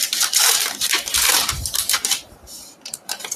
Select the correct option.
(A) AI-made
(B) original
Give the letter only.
A